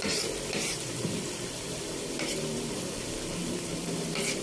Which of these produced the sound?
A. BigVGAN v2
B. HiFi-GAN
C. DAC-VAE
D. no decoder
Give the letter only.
A